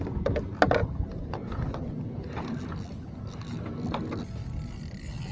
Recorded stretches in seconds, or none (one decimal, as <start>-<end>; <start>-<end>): 0.0-5.3

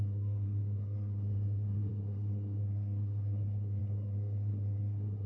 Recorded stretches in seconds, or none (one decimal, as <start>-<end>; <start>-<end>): none

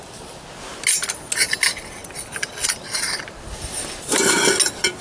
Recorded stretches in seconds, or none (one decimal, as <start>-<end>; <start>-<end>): 0.0-5.0

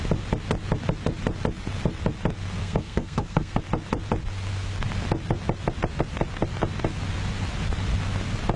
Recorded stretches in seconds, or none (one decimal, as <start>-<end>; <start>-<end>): 0.0-2.6; 3.6-8.6

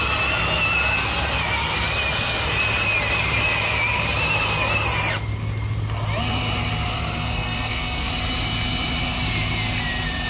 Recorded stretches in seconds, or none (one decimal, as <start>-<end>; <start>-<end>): 0.0-6.9; 8.1-10.3

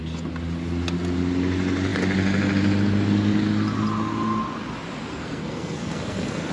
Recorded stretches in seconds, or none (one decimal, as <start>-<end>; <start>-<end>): 0.0-5.1